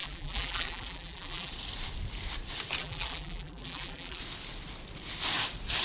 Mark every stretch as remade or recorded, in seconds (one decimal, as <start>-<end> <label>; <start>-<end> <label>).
0.0-1.5 remade; 1.5-2.8 recorded; 2.8-4.2 remade; 4.2-5.8 recorded